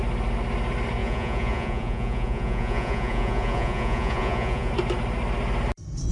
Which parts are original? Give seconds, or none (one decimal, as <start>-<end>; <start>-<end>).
0.0-1.0; 4.7-6.1